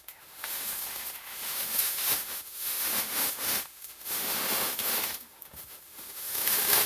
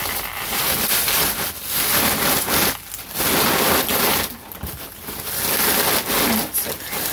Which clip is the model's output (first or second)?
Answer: first